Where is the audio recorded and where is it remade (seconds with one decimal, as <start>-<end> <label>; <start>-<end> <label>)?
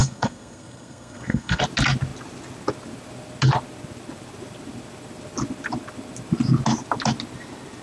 0.0-1.6 remade; 1.6-7.8 recorded